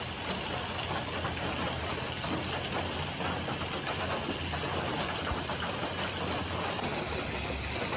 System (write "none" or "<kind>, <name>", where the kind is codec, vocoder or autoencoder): none